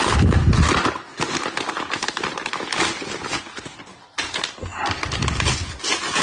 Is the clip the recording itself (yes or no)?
yes